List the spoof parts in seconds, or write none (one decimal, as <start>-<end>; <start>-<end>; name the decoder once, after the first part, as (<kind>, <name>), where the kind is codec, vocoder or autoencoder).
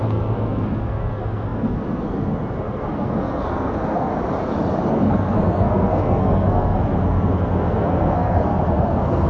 0.0-4.1 (codec, SNAC); 4.9-9.3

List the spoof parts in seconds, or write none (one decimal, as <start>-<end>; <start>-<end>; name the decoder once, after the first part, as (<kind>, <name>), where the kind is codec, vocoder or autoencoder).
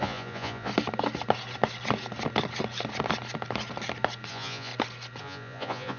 0.0-0.7 (vocoder, Vocos); 4.3-4.7; 5.2-6.0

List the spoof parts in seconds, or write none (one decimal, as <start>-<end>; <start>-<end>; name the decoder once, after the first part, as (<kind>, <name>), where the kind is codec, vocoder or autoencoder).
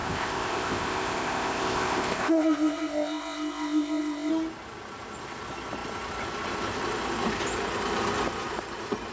0.0-4.3 (codec, ZipCodec)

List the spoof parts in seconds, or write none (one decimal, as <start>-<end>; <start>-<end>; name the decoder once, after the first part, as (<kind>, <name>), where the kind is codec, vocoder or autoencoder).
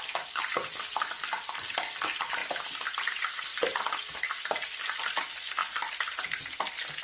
none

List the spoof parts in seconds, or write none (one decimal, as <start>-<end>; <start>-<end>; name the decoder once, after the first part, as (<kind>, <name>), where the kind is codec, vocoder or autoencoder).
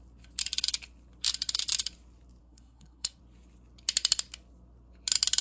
2.4-3.2 (codec, SNAC)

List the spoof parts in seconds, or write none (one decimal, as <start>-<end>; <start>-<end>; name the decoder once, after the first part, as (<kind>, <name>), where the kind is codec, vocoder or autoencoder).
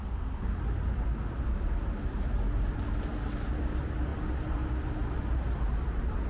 none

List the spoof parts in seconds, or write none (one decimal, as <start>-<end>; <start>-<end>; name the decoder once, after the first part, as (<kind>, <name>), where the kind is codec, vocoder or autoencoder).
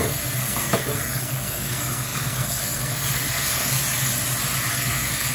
0.0-3.8 (codec, SNAC); 4.7-5.3